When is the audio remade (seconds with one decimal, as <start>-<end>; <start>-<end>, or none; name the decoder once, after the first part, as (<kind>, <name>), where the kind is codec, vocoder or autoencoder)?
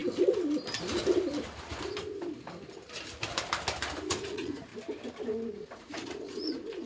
4.1-4.7 (vocoder, Vocos); 5.5-6.9